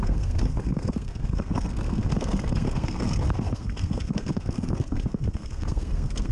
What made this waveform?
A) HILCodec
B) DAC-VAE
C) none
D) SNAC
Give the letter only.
D